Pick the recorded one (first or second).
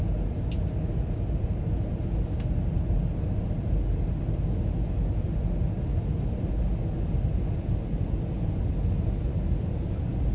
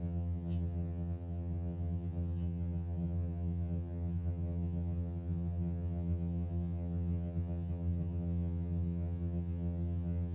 first